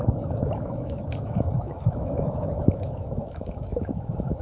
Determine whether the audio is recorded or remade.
remade